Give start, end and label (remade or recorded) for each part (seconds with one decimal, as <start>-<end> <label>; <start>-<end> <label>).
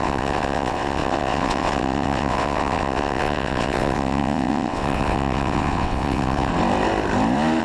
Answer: 0.0-6.5 remade; 6.5-7.6 recorded